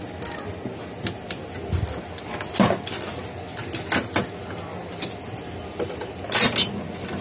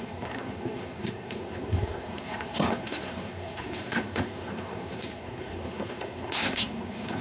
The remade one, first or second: second